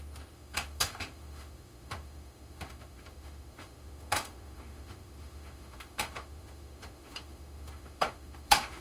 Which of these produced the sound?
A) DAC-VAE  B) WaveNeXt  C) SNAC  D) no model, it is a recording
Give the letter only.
A